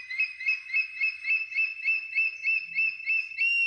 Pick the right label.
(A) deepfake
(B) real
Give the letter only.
B